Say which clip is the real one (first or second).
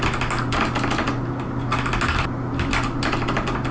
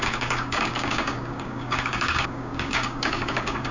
first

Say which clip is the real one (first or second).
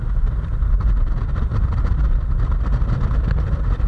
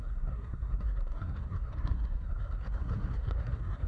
first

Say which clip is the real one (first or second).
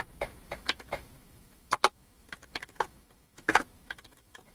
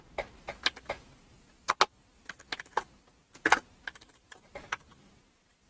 second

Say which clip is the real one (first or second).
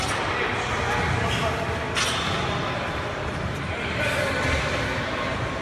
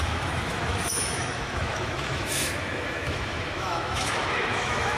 first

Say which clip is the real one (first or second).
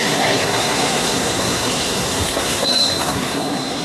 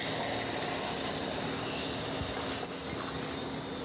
second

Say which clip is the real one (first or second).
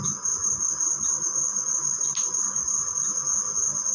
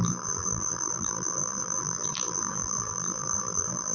first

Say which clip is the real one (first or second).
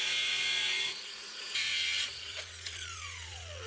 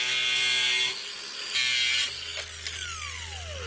second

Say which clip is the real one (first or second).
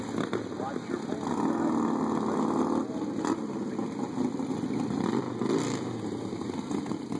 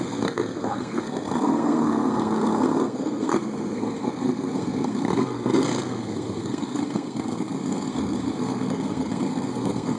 first